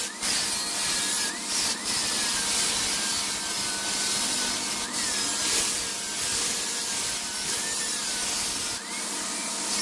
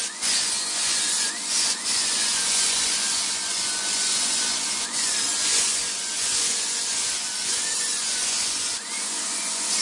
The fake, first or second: second